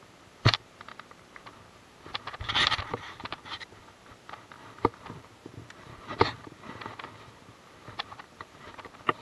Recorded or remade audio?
remade